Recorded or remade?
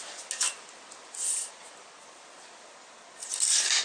recorded